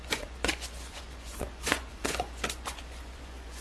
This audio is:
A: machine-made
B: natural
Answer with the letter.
A